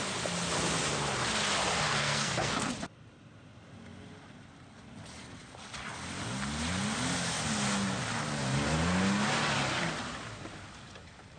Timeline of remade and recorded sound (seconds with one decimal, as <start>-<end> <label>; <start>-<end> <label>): 0.0-1.9 recorded; 1.9-2.7 remade; 2.7-11.4 recorded